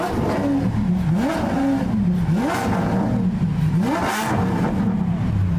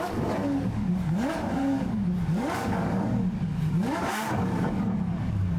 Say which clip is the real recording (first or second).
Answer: first